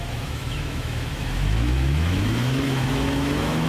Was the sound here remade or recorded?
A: remade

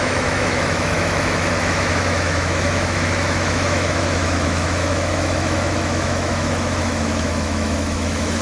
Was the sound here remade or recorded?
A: remade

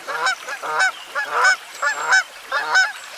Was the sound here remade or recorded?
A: recorded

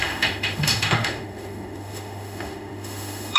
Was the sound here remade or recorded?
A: remade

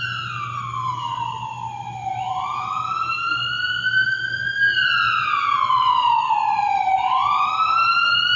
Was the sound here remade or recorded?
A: recorded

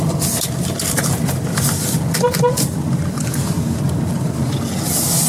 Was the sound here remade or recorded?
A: recorded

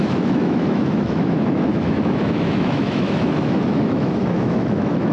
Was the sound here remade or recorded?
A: remade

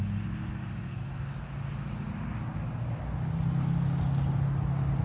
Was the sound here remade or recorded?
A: recorded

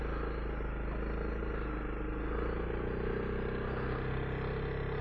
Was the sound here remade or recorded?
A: recorded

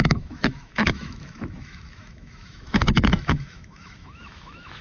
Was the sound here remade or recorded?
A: remade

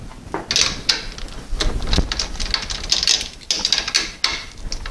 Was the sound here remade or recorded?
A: recorded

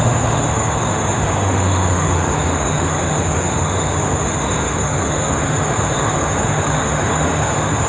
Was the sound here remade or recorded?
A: remade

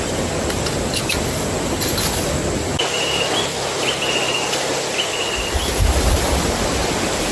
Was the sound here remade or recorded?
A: recorded